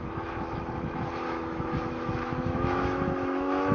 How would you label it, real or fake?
fake